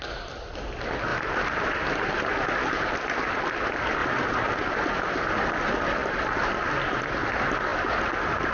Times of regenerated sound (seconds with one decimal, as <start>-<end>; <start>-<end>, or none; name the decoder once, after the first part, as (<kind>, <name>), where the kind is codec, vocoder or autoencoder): 1.1-1.7 (vocoder, BigVGAN v2); 4.0-4.7